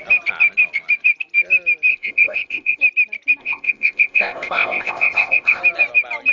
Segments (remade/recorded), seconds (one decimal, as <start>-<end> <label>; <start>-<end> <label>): 0.0-1.9 recorded; 1.9-2.8 remade; 2.8-3.4 recorded; 3.4-5.6 remade; 5.6-6.3 recorded